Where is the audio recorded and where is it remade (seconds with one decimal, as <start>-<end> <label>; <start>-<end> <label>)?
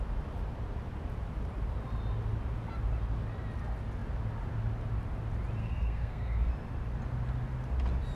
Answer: 0.0-5.6 recorded; 5.6-6.5 remade; 6.5-8.2 recorded